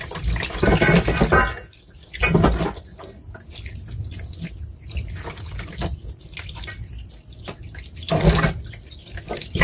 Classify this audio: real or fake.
real